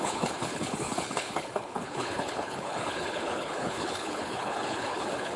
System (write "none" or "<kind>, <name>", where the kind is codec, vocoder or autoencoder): codec, HILCodec